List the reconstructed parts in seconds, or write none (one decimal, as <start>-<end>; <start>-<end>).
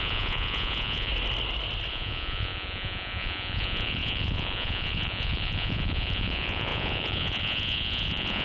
0.0-1.1; 1.9-8.4